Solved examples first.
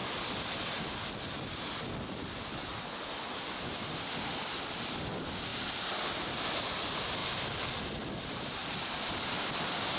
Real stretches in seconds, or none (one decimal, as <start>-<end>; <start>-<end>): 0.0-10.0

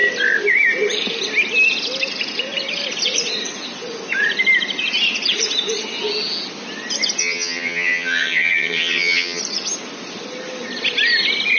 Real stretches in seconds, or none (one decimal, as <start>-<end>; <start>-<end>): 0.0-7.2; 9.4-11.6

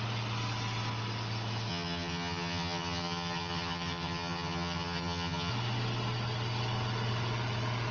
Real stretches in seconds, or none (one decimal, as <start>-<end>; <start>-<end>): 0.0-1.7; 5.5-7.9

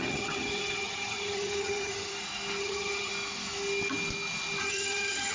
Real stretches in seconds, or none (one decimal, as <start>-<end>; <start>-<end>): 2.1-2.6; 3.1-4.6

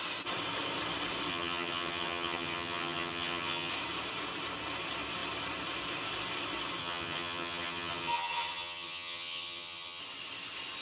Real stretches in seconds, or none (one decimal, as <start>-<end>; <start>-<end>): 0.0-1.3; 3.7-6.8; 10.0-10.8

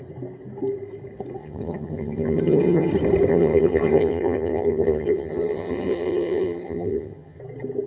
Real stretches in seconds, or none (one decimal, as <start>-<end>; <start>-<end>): 0.0-1.4; 2.9-3.3; 7.4-7.9

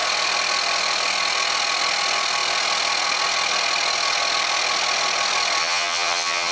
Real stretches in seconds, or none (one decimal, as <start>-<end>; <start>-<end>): 0.0-5.6

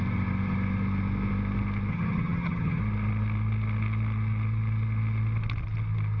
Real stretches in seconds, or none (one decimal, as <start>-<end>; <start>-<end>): 0.0-1.9; 2.8-6.2